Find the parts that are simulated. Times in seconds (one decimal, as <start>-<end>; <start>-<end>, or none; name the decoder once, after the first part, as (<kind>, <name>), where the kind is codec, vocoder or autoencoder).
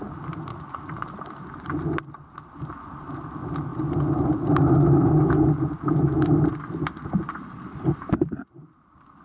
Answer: 0.5-1.1 (vocoder, Vocos)